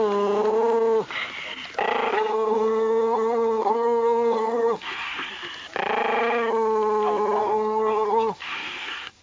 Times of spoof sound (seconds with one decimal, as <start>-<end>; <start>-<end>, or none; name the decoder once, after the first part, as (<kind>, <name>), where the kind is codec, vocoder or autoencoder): 2.1-5.3 (codec, SNAC); 7.4-9.2